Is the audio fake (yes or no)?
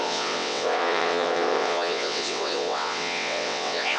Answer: yes